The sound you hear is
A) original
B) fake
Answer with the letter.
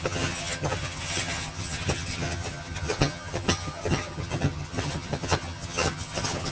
B